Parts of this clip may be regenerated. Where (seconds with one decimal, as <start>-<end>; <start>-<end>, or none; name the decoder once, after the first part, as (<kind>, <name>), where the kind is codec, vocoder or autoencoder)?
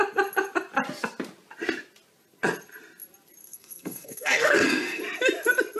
3.4-5.0 (codec, SNAC)